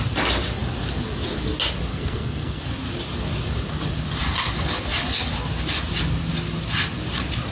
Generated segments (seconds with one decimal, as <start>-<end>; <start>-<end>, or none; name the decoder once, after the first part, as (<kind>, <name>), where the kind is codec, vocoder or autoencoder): 1.9-2.6 (codec, SNAC)